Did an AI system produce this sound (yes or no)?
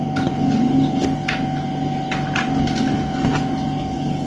no